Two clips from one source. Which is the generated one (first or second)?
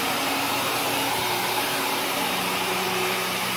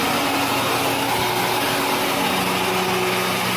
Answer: first